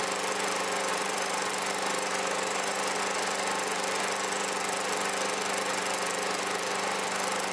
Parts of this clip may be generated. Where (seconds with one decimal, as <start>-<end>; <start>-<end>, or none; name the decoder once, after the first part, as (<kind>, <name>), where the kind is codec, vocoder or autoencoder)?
0.9-3.0 (vocoder, BigVGAN v2)